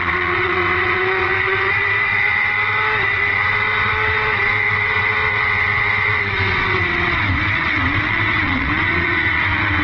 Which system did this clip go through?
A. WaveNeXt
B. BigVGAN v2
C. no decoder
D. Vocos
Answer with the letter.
A